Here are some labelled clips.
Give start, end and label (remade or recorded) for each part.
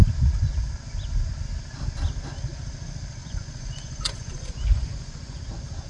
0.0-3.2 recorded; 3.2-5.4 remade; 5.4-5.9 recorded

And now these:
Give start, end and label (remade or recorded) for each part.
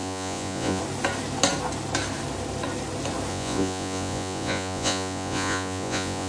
0.0-0.8 remade; 0.8-3.3 recorded; 3.3-6.3 remade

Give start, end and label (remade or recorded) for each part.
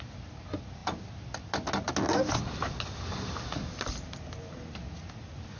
0.0-5.6 recorded